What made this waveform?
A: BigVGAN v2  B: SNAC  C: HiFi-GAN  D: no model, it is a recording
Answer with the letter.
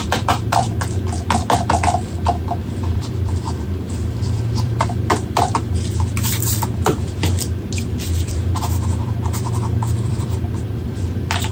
A